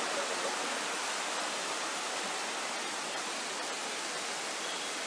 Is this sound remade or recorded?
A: recorded